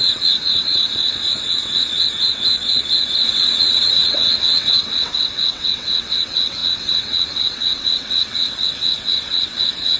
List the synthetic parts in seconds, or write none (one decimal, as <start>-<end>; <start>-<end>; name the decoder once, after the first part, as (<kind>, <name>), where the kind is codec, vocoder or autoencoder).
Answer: 0.0-10.0 (vocoder, WaveNeXt)